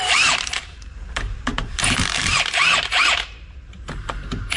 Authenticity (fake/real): fake